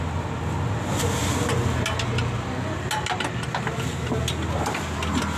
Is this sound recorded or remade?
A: recorded